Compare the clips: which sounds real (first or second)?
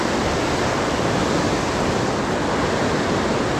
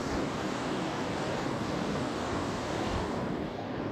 first